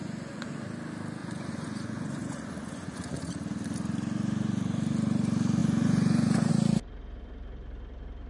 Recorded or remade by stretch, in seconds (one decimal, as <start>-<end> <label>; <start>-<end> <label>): 0.0-0.6 remade; 0.6-1.2 recorded; 1.2-3.3 remade; 3.3-5.6 recorded; 5.6-6.5 remade; 6.5-8.3 recorded